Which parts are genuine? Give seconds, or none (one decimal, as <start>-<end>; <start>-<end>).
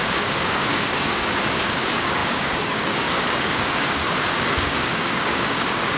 none